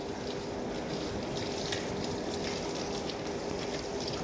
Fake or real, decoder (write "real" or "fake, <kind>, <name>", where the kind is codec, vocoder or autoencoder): real